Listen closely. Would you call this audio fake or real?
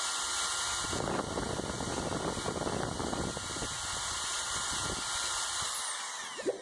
real